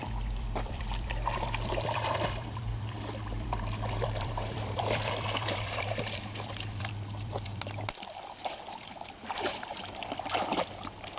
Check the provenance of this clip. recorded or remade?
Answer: remade